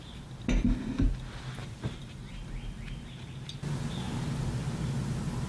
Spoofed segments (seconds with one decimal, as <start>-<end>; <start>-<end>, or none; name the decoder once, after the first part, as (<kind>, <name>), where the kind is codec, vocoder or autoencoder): 1.6-2.4 (vocoder, BigVGAN v2)